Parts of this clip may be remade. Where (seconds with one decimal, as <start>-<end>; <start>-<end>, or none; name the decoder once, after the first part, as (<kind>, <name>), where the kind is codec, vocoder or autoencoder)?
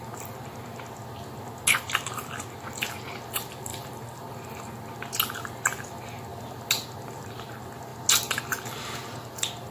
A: none